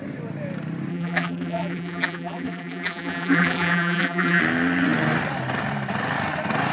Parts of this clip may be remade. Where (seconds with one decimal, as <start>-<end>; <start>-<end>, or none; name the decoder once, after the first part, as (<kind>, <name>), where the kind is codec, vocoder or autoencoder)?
0.9-4.4 (vocoder, BigVGAN v2)